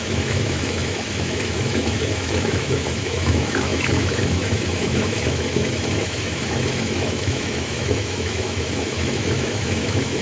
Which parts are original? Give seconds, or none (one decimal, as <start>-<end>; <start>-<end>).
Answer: none